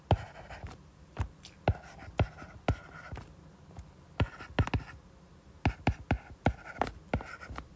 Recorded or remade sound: recorded